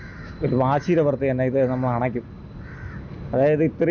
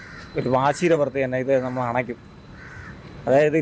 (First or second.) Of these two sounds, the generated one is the second